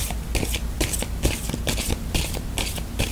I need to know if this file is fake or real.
real